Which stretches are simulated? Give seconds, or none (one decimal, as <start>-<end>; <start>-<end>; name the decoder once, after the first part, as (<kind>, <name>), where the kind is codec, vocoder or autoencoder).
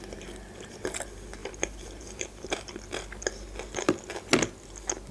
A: 1.4-2.7 (vocoder, BigVGAN v2)